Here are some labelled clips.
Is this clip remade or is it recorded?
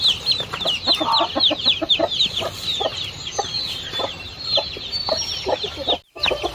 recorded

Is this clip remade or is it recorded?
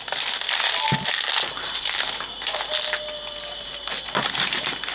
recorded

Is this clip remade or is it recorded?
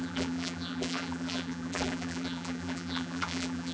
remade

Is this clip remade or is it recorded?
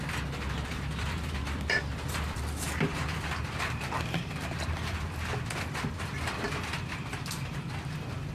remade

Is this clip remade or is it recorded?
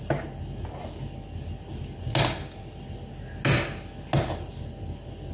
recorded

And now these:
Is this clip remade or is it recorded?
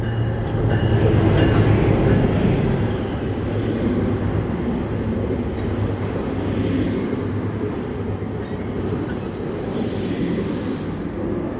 recorded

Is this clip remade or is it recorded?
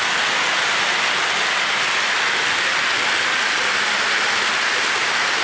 recorded